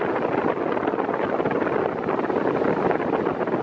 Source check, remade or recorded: recorded